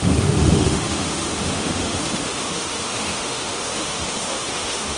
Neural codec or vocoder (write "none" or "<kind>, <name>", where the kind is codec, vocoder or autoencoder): autoencoder, DAC-VAE